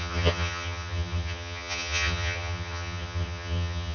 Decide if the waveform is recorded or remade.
remade